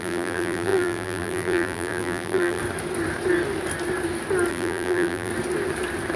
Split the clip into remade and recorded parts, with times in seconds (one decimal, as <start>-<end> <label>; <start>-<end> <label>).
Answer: 0.0-2.6 remade; 2.6-4.5 recorded; 4.5-5.3 remade; 5.3-6.2 recorded